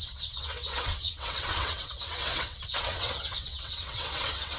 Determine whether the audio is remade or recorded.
remade